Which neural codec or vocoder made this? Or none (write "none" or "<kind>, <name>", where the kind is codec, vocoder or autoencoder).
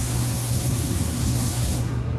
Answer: codec, SNAC